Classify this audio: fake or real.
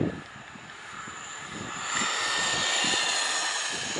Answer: real